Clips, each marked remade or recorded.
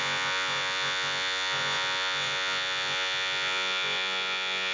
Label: remade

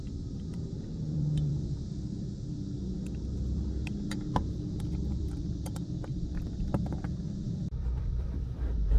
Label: remade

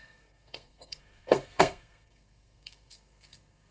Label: remade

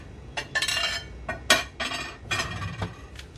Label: recorded